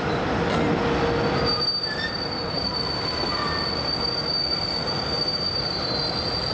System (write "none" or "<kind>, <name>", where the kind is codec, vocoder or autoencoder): none